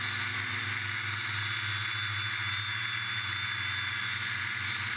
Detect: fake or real real